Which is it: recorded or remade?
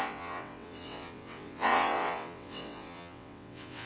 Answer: remade